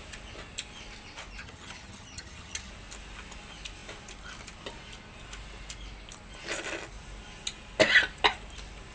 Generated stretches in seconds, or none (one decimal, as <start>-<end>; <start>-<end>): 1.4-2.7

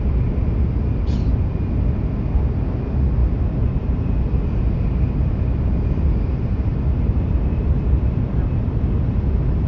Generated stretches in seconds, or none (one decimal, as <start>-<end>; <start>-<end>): none

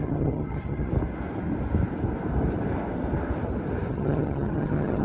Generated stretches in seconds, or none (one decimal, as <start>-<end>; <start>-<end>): 0.0-0.9; 3.9-5.0